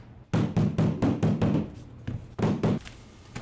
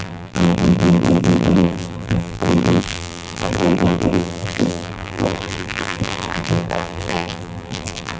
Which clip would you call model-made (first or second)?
second